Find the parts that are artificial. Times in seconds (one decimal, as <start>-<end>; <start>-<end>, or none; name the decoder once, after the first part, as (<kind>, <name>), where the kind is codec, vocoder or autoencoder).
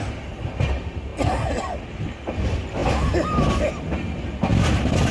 4.5-5.1 (vocoder, BigVGAN v2)